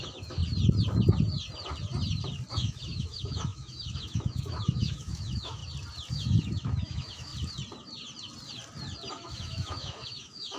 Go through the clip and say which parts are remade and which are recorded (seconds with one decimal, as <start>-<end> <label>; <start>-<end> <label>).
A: 0.0-0.4 remade; 0.4-2.5 recorded; 2.5-5.6 remade; 5.6-6.1 recorded; 6.1-7.3 remade; 7.3-9.1 recorded; 9.1-10.6 remade